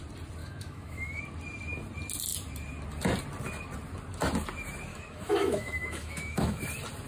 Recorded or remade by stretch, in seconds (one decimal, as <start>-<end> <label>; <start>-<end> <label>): 0.0-0.4 recorded; 0.4-1.2 remade; 1.2-4.9 recorded; 4.9-6.6 remade; 6.6-7.1 recorded

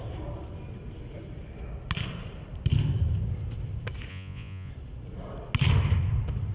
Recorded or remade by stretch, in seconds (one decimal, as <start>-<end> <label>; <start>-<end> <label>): 0.0-4.1 recorded; 4.1-4.7 remade; 4.7-6.5 recorded

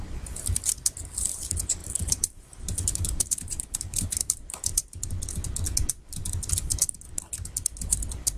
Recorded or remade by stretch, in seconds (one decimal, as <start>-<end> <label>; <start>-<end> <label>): 0.0-1.8 recorded; 1.8-5.1 remade; 5.1-8.4 recorded

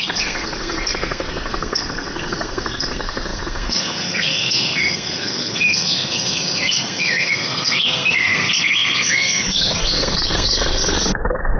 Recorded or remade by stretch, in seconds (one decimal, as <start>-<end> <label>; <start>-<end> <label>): 0.0-11.6 remade